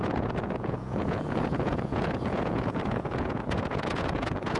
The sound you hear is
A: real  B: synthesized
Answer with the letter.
B